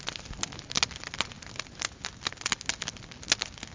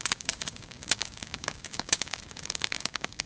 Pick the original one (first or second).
first